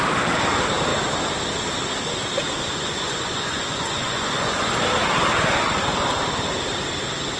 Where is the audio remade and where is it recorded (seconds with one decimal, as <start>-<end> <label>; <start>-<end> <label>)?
0.0-2.7 recorded; 2.7-4.7 remade; 4.7-7.4 recorded